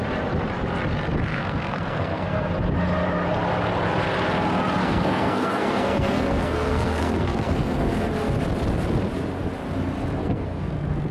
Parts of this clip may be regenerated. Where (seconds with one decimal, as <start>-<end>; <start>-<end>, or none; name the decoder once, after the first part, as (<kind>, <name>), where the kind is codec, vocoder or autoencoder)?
1.3-2.5 (codec, SNAC); 4.8-8.1; 10.2-10.7